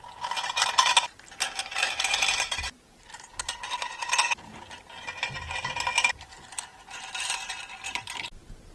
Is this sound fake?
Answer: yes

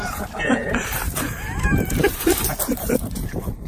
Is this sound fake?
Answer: yes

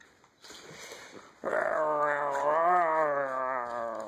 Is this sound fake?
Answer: no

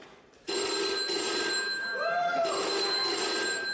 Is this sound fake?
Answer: yes